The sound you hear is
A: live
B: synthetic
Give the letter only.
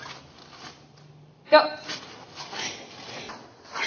A